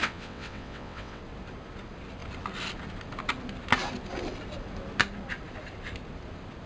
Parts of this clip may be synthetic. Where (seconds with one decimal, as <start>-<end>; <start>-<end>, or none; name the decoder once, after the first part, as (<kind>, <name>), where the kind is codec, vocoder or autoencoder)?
0.0-1.2 (vocoder, WaveNeXt)